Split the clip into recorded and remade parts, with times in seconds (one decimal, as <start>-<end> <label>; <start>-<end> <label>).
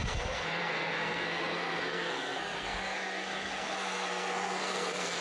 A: 0.0-5.2 remade